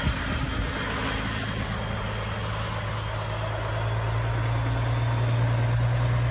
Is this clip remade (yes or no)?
no